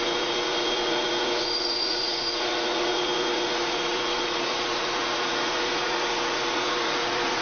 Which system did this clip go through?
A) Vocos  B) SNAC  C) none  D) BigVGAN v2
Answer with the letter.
A